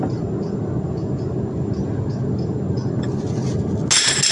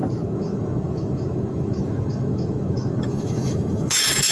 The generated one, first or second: second